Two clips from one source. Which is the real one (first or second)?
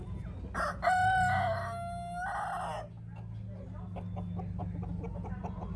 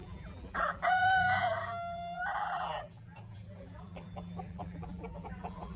first